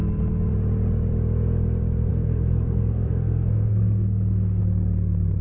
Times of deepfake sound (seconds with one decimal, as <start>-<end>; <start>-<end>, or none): 2.1-4.6